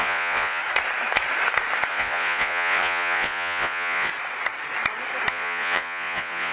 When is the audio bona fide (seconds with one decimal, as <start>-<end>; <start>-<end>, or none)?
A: 0.6-1.9; 4.1-5.3